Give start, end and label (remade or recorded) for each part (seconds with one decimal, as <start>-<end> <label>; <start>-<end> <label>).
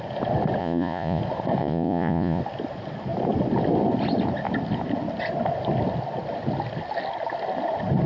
0.0-0.6 recorded; 0.6-1.2 remade; 1.2-1.6 recorded; 1.6-2.4 remade; 2.4-8.1 recorded